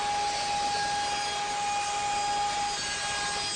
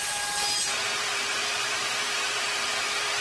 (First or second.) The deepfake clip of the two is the second